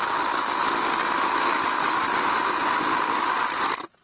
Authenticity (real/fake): real